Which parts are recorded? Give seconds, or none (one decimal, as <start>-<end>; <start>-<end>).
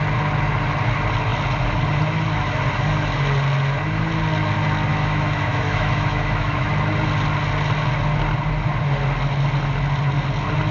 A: 0.0-4.9; 6.7-10.7